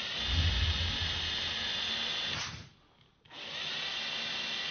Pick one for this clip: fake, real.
real